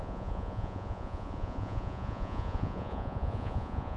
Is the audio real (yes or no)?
no